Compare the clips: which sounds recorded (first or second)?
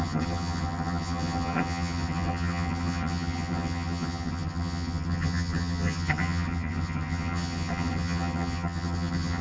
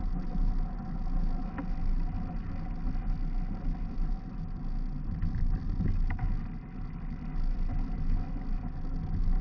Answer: second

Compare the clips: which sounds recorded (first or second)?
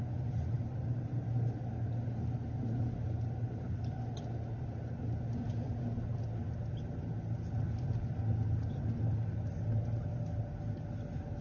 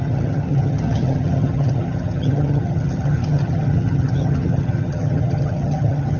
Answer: first